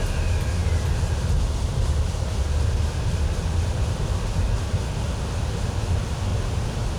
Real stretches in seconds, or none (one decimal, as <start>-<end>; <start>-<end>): 0.0-6.3